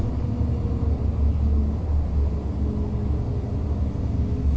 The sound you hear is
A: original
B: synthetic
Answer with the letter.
A